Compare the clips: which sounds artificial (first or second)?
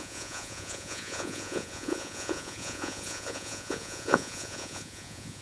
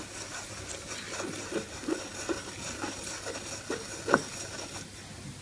first